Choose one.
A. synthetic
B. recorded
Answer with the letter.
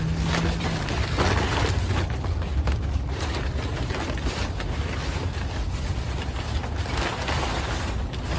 B